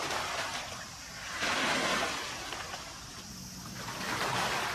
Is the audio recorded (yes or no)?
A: yes